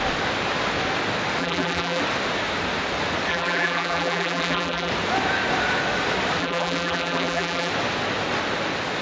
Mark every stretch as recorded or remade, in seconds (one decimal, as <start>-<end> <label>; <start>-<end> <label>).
0.0-1.4 recorded; 1.4-2.0 remade; 2.0-3.3 recorded; 3.3-4.9 remade; 4.9-6.4 recorded; 6.4-7.7 remade; 7.7-9.0 recorded